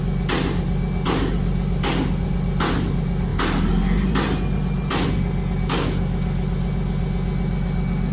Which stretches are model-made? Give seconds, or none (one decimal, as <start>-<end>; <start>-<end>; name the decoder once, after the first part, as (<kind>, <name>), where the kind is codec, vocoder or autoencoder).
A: none